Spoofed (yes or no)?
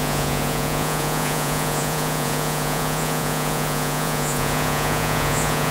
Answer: yes